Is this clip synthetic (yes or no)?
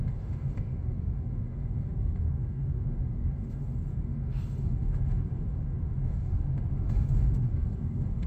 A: yes